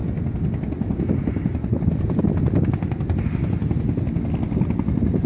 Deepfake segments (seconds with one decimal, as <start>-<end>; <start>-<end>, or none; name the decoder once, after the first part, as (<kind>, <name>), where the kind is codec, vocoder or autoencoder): none